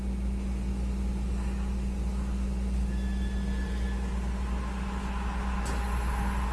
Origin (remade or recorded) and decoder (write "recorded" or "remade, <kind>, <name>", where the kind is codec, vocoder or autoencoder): recorded